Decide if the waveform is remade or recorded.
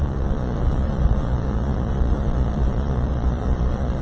remade